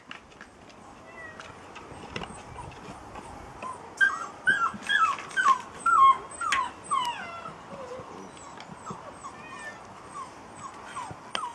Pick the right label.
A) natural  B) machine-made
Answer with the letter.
A